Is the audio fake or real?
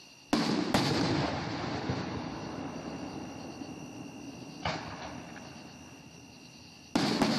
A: real